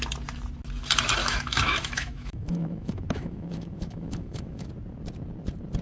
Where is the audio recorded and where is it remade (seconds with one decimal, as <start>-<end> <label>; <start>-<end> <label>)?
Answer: 0.0-1.2 recorded; 1.2-4.7 remade; 4.7-5.8 recorded